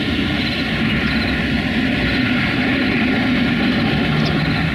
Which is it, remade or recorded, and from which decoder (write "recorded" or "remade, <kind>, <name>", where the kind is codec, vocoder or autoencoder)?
recorded